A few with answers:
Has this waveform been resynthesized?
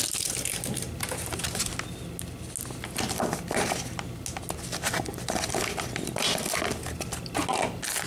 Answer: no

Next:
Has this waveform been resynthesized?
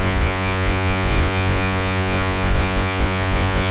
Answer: yes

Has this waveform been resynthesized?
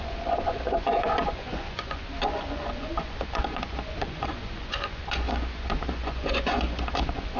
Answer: yes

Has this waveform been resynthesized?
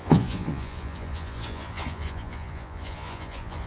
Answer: yes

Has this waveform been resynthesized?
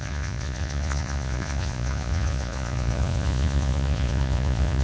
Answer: yes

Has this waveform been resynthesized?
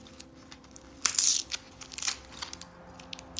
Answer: no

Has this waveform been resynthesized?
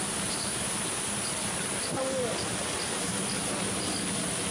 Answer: no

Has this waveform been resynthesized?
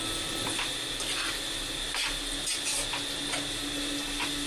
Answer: no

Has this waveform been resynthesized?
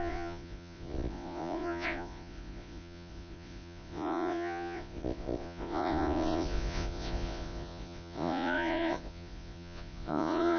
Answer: yes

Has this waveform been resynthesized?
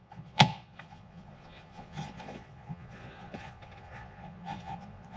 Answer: yes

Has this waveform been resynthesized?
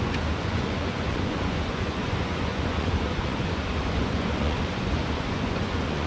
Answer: yes